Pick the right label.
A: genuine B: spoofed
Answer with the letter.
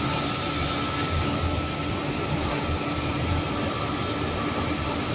A